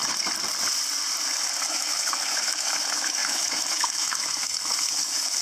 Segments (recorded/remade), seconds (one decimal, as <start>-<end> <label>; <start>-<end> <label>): 0.0-1.7 recorded; 1.7-5.4 remade